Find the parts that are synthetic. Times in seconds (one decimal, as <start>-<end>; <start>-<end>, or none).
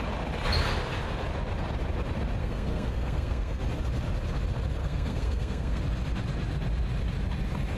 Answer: 2.4-3.6; 4.8-5.8